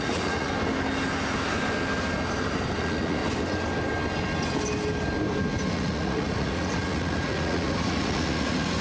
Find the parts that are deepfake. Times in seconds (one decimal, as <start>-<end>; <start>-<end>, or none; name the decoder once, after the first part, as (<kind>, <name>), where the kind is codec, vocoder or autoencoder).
0.0-0.5 (vocoder, Vocos); 2.8-3.2; 5.7-8.8

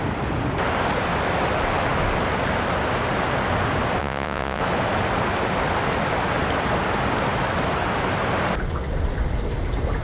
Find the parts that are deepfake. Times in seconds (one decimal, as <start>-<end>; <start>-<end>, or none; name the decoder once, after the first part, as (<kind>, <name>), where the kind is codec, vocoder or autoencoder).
4.0-4.6 (vocoder, Vocos)

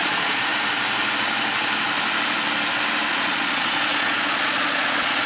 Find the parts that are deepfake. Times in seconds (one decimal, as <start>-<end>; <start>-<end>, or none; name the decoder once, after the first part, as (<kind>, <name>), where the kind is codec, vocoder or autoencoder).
0.0-0.5 (vocoder, Vocos); 3.1-5.3

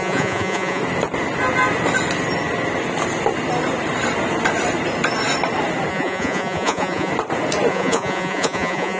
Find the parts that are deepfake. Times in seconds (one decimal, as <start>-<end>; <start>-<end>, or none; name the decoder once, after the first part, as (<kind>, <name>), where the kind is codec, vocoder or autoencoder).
0.0-0.8 (vocoder, Vocos); 5.9-7.1; 7.7-9.0

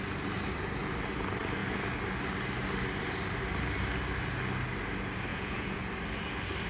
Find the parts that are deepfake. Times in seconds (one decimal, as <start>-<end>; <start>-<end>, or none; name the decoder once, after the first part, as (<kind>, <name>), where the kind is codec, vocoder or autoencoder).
5.3-5.9 (vocoder, Vocos)

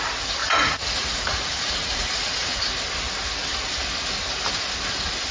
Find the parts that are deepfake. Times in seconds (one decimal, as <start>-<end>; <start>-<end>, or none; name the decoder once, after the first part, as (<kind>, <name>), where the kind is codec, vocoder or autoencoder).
0.4-2.7 (vocoder, Vocos)

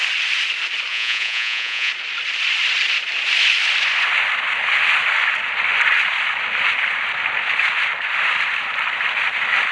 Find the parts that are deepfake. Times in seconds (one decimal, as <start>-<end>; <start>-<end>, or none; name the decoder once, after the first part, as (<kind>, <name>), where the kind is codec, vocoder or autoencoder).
0.9-1.9 (vocoder, Vocos)

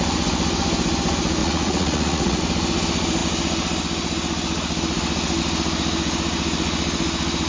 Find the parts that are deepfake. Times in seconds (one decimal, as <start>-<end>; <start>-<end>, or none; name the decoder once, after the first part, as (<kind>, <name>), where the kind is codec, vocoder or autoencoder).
1.4-2.4 (vocoder, Vocos)